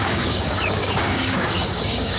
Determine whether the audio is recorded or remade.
remade